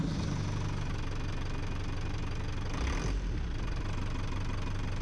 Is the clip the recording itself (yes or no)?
yes